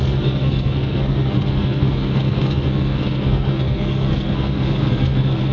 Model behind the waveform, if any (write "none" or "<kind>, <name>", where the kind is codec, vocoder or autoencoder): codec, SNAC